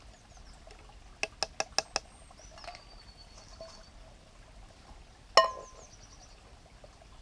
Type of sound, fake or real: real